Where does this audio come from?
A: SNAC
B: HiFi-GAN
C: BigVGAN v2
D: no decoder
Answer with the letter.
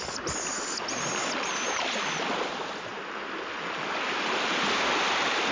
D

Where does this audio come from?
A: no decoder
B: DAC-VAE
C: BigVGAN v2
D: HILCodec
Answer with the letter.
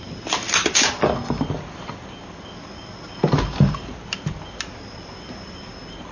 A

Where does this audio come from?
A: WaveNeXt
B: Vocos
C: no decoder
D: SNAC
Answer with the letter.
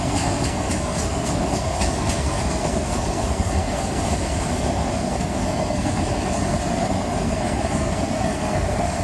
D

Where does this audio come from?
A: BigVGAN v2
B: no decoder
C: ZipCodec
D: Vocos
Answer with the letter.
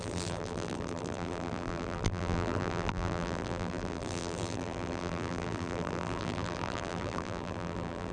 A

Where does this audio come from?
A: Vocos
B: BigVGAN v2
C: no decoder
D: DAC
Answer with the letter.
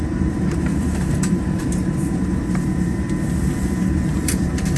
B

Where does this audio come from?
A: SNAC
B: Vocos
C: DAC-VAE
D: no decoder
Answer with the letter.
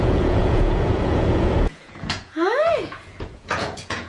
B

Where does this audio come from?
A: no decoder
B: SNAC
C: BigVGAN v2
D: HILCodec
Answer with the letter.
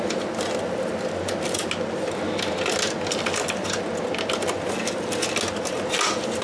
A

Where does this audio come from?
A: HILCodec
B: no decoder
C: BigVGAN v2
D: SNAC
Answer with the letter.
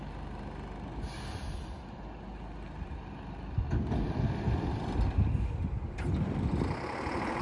B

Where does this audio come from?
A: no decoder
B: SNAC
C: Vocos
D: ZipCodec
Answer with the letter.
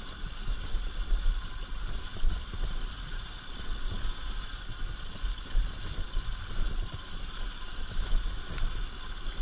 A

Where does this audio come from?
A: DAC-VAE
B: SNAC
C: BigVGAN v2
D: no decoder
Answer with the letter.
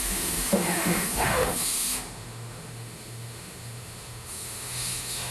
A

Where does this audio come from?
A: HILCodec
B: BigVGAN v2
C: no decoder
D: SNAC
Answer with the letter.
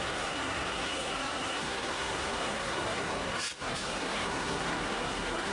D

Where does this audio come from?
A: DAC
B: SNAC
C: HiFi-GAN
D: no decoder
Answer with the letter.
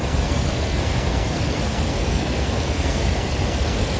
B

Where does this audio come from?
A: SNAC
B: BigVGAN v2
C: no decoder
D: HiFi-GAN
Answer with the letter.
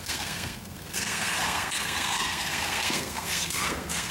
A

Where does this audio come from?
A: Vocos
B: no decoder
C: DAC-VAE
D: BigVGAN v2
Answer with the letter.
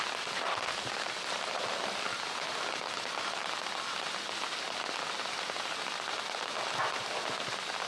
B